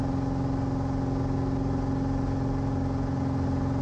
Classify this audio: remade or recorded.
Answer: recorded